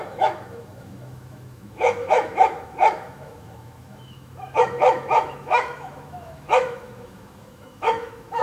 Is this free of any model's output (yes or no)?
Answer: no